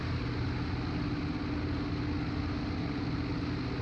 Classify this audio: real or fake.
real